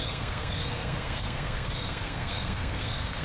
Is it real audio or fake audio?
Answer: fake